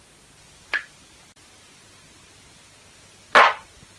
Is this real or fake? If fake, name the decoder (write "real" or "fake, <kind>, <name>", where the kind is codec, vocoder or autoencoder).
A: real